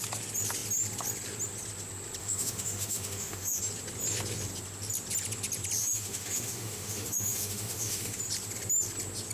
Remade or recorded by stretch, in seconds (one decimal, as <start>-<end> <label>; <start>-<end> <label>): 0.0-2.2 recorded; 2.2-3.6 remade; 3.6-5.8 recorded; 5.8-8.2 remade; 8.2-9.3 recorded